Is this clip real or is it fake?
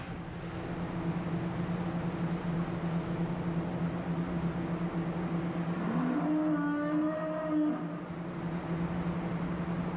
real